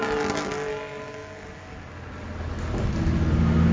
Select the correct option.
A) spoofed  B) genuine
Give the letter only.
B